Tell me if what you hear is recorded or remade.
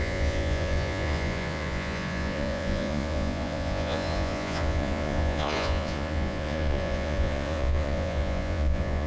remade